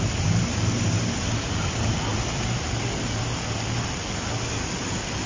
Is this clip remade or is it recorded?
recorded